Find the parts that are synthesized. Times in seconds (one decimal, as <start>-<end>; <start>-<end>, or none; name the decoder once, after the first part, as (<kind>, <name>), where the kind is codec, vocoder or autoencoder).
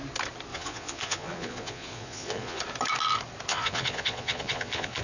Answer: 0.5-2.6 (vocoder, Vocos); 3.5-5.0